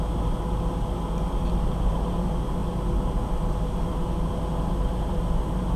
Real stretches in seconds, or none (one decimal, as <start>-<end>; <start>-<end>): 0.0-5.8